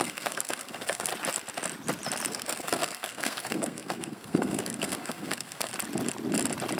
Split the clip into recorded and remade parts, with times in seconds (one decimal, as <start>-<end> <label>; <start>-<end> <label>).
0.0-1.1 remade; 1.1-2.3 recorded; 2.3-5.7 remade; 5.7-6.8 recorded